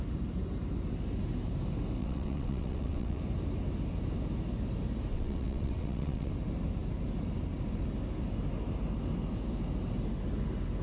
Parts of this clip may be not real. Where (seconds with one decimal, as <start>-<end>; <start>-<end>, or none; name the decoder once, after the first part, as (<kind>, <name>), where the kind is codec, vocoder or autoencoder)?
2.0-3.2 (vocoder, WaveNeXt); 5.1-6.3